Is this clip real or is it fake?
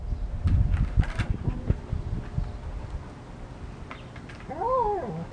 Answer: real